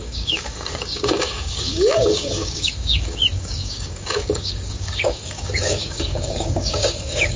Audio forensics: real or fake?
fake